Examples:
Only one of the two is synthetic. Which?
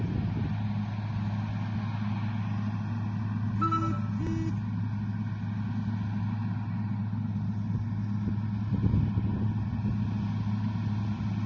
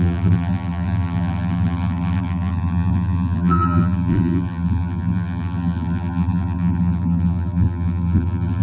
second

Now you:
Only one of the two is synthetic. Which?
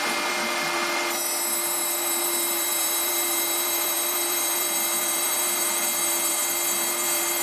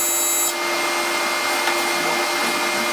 first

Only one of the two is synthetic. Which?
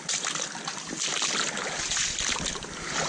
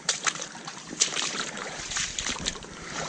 second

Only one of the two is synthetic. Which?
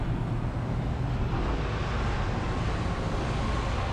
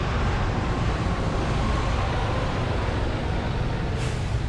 second